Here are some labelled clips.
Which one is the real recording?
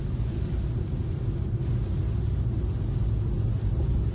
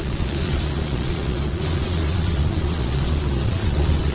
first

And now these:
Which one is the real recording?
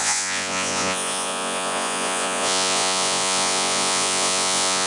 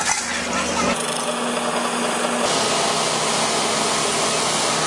second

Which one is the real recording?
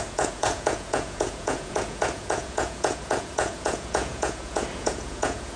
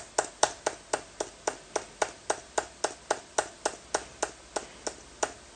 second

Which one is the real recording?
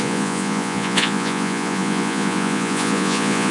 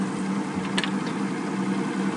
second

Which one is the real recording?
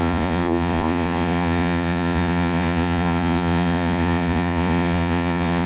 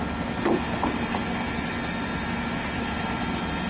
second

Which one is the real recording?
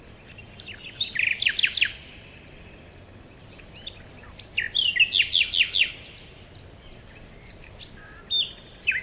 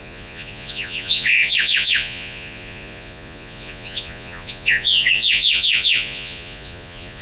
first